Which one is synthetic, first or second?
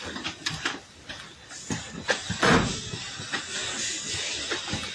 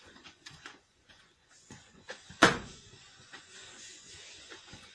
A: second